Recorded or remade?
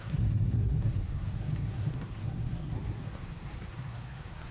remade